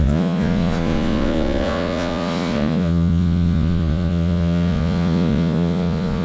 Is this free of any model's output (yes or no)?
no